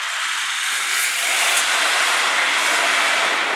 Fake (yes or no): no